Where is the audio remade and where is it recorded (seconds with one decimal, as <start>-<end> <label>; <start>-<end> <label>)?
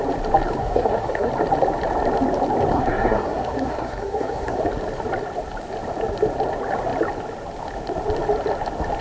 0.0-0.6 recorded; 0.6-1.3 remade; 1.3-2.7 recorded; 2.7-4.6 remade; 4.6-9.0 recorded